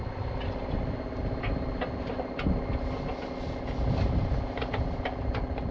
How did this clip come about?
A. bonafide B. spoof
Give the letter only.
A